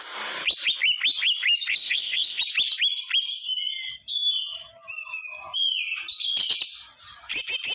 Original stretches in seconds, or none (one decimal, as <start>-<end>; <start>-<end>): 0.0-1.7; 2.4-7.7